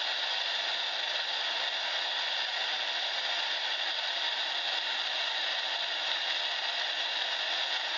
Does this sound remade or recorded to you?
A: recorded